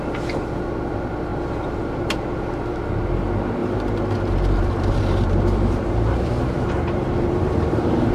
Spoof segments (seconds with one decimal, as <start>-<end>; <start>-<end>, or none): 1.3-2.4; 3.6-8.1